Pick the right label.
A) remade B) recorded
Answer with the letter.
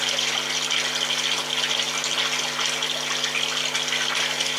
B